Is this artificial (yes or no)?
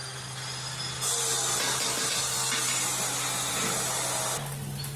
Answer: no